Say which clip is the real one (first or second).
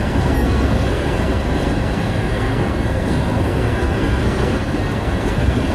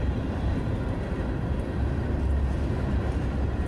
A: second